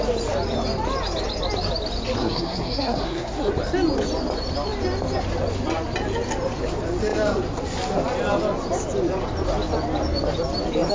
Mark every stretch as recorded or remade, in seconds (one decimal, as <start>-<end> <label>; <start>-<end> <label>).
0.0-2.2 recorded; 2.2-3.5 remade; 3.5-10.9 recorded